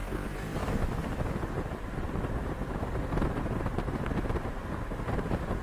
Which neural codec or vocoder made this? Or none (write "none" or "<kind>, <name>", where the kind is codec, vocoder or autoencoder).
none